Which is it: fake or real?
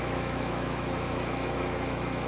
fake